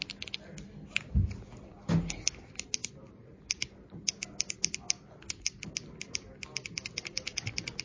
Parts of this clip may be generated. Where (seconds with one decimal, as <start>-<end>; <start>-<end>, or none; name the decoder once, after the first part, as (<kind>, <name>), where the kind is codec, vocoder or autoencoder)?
none